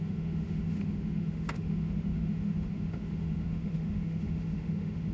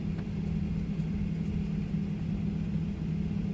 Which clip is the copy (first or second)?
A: first